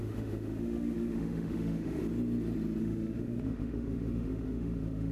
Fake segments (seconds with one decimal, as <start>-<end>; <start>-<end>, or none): 0.0-2.0; 2.8-5.1